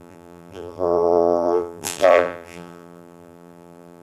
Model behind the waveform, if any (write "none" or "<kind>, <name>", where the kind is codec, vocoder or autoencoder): vocoder, BigVGAN v2